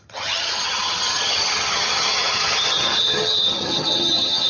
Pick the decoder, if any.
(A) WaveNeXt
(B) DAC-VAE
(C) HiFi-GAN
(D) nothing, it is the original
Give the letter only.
C